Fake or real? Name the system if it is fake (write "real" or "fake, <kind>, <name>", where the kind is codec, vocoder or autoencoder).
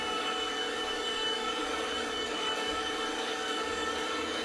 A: fake, codec, DAC